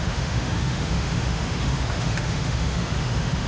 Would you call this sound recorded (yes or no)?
no